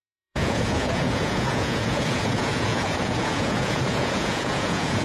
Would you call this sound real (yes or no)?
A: no